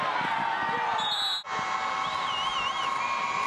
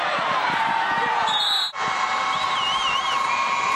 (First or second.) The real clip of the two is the first